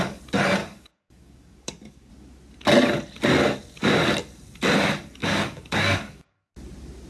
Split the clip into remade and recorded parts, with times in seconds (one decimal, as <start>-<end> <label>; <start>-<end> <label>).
0.0-0.6 recorded; 0.6-2.1 remade; 2.1-5.2 recorded; 5.2-6.5 remade; 6.5-7.1 recorded